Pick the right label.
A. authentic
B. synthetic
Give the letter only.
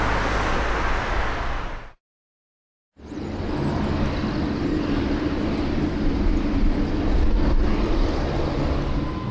A